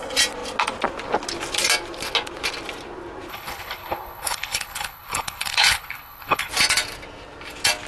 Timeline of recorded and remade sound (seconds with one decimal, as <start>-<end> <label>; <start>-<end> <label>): 0.0-3.3 recorded; 3.3-6.5 remade; 6.5-7.9 recorded